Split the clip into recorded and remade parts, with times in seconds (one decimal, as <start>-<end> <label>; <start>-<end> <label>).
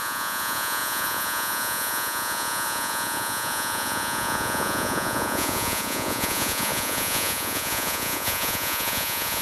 0.0-9.4 remade